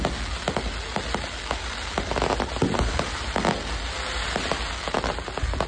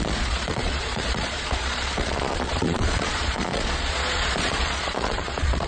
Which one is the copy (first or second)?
second